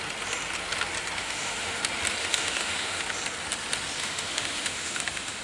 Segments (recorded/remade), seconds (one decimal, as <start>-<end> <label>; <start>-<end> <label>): 0.0-1.2 recorded; 1.2-1.8 remade; 1.8-2.2 recorded; 2.2-3.0 remade; 3.0-4.0 recorded; 4.0-5.4 remade